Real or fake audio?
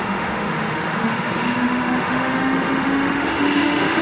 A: fake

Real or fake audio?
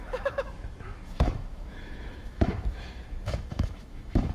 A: fake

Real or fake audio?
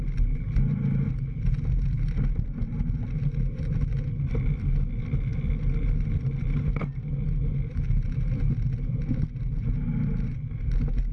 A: real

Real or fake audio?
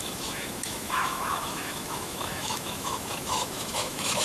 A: fake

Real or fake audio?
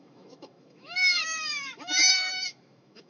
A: fake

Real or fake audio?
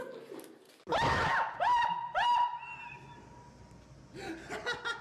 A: real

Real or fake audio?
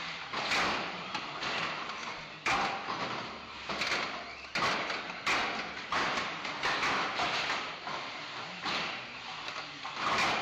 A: real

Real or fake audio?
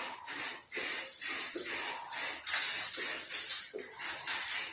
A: real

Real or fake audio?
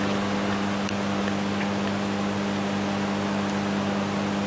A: real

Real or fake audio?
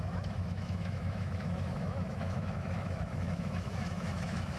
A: fake